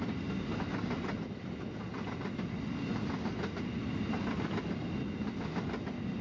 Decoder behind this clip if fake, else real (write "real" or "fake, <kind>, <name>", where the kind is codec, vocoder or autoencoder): real